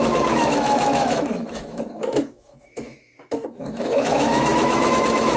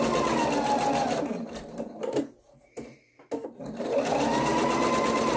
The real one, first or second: second